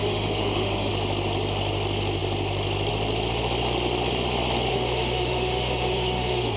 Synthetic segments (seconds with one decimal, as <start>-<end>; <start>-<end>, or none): 0.0-0.9; 4.7-6.6